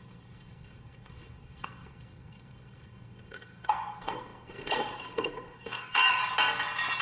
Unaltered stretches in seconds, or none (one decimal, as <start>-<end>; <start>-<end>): 6.2-7.0